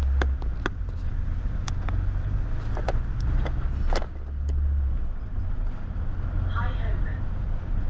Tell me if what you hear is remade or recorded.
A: recorded